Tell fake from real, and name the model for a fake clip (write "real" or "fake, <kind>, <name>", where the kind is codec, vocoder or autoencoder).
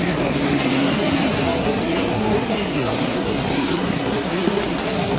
fake, codec, SNAC